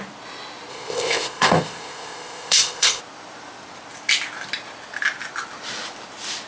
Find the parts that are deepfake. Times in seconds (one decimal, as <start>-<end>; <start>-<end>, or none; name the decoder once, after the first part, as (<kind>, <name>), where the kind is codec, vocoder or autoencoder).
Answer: 0.7-3.0 (codec, ZipCodec)